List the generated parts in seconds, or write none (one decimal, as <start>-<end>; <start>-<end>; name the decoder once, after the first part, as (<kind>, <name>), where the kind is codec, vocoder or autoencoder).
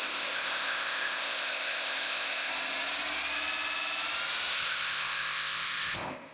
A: 0.0-2.5 (codec, ZipCodec); 4.5-6.3